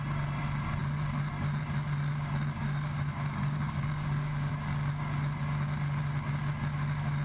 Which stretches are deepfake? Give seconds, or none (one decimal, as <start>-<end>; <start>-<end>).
2.6-4.5